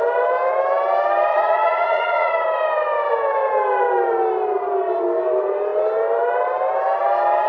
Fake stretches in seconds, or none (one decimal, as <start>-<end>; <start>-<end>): 1.3-2.3